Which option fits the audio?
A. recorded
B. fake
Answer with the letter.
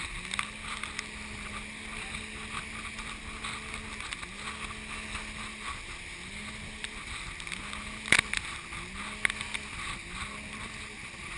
A